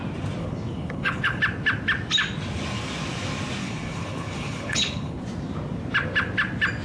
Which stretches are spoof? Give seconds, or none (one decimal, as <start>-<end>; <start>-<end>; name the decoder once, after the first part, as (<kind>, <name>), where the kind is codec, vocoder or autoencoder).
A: 0.4-1.4 (codec, HILCodec); 3.6-5.2